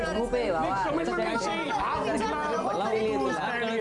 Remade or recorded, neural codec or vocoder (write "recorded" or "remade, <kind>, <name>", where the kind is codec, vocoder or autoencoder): recorded